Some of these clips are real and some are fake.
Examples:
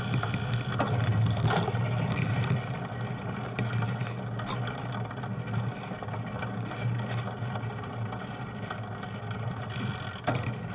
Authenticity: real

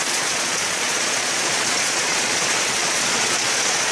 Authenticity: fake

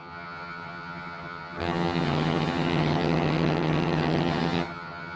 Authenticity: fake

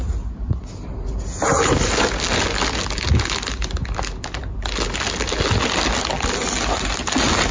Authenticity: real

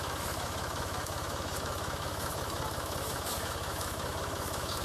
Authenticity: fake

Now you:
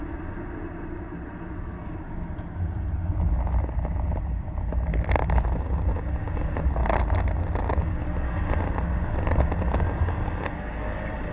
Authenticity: real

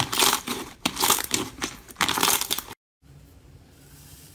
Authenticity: fake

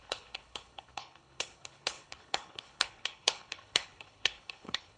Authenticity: fake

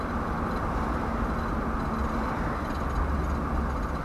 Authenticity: real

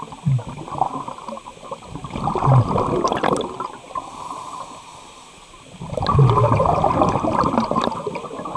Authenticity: real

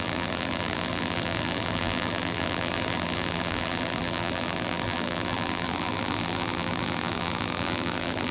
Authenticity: fake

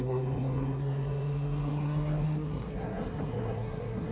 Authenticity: fake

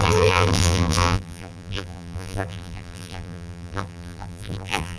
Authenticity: fake